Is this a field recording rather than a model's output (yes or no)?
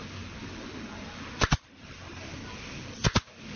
yes